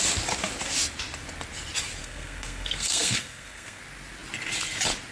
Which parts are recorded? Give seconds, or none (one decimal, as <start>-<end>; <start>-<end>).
0.0-2.0; 3.8-5.1